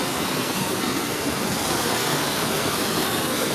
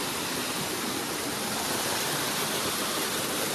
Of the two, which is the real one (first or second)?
second